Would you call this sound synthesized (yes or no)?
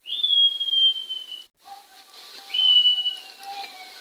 no